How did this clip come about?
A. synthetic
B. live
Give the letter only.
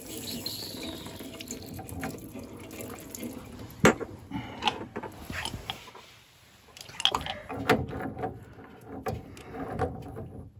B